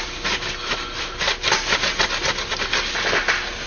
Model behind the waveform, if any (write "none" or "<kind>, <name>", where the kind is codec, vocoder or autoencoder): none